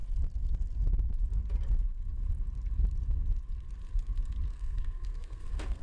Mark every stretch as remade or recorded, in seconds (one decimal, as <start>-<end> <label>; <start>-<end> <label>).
0.0-4.5 recorded; 4.5-5.8 remade